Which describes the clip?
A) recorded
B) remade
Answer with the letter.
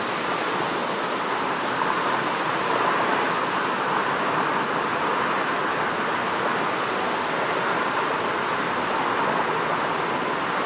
A